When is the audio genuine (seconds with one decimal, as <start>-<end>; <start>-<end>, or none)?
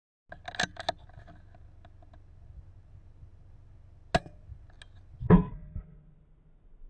0.0-5.2; 5.8-6.9